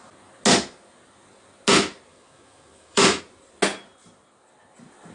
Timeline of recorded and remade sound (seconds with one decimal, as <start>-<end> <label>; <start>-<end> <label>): 0.0-2.1 recorded; 2.1-3.2 remade; 3.2-5.1 recorded